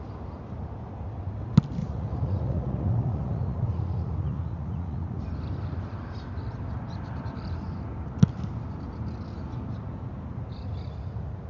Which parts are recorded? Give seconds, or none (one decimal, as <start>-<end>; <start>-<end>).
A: 0.0-1.8; 5.2-11.5